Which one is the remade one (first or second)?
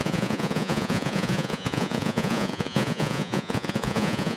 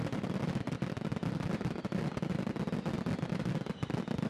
first